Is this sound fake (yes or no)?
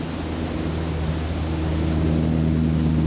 no